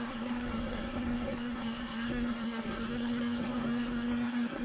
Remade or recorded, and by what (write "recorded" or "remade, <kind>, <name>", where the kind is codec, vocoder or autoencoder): remade, codec, SNAC